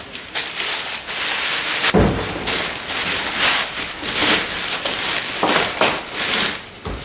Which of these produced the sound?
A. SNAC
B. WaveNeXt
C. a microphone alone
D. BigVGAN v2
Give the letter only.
C